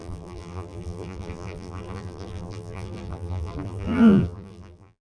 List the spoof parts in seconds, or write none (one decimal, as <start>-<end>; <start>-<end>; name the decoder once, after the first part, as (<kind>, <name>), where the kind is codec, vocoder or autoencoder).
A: 0.0-5.1 (vocoder, BigVGAN v2)